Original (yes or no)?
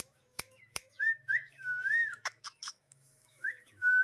no